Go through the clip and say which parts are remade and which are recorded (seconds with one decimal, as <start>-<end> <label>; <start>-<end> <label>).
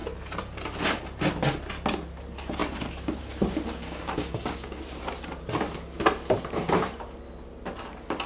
0.0-3.8 recorded; 3.8-4.8 remade; 4.8-8.3 recorded